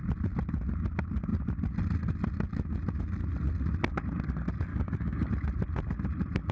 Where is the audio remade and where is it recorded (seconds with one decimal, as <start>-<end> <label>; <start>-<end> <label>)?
0.0-4.7 recorded; 4.7-5.3 remade; 5.3-6.5 recorded